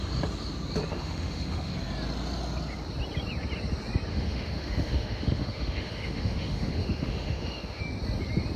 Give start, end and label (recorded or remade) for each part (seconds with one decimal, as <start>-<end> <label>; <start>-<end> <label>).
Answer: 0.0-0.9 recorded; 0.9-1.7 remade; 1.7-4.1 recorded; 4.1-7.8 remade; 7.8-8.6 recorded